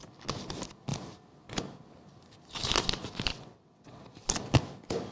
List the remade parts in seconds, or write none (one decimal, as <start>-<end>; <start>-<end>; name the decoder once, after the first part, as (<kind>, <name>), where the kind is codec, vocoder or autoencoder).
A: 3.3-4.0 (vocoder, WaveNeXt)